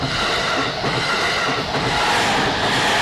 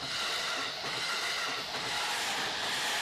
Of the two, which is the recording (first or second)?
first